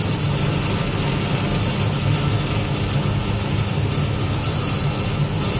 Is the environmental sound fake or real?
real